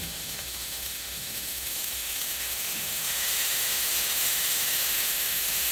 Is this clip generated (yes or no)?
yes